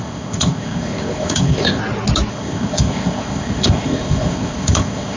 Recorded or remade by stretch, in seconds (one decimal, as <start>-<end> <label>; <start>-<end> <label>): 0.0-1.8 remade; 1.8-2.3 recorded; 2.3-5.2 remade